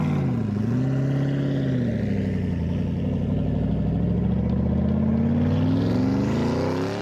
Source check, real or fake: real